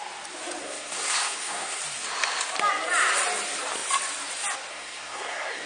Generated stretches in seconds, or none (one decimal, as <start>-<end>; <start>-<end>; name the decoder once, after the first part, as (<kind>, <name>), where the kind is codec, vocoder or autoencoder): 0.6-1.8 (codec, SNAC); 4.7-5.7